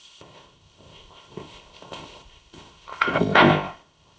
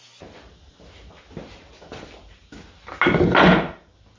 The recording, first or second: second